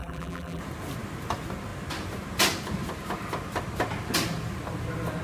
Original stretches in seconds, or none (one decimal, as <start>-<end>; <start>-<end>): 0.6-5.2

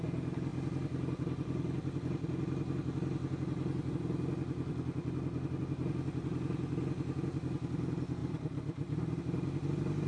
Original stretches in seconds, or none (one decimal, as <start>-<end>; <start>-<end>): 0.0-8.2; 9.2-10.1

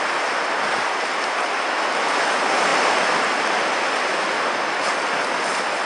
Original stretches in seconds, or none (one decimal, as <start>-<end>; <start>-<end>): 0.0-5.9

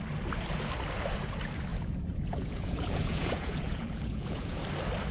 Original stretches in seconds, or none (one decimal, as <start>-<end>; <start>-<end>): 0.0-1.7; 4.6-5.1

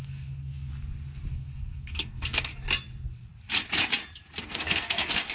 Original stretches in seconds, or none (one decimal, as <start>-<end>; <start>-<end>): 0.7-1.3; 2.5-4.4